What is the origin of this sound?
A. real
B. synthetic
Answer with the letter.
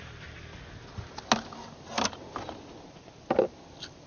A